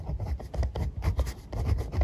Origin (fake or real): real